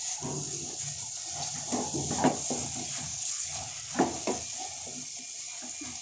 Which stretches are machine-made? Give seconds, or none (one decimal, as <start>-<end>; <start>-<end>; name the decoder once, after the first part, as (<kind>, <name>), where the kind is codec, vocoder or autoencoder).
3.1-3.7 (codec, HILCodec)